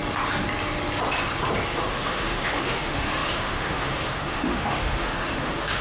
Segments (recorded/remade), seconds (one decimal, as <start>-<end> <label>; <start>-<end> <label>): 0.0-1.9 recorded; 1.9-5.8 remade